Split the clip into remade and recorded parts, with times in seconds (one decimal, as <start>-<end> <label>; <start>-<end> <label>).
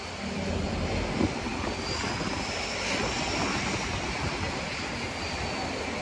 0.0-6.0 recorded